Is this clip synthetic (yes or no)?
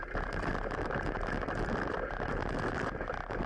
no